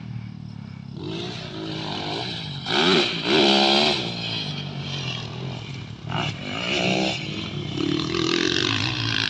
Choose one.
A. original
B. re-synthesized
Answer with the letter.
A